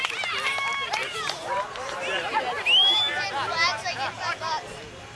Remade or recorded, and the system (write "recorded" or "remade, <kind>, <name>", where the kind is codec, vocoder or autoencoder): recorded